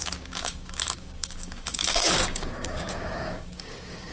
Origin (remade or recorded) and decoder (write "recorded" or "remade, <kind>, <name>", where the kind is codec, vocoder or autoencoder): remade, codec, DAC